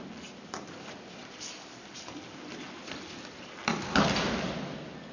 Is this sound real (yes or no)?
yes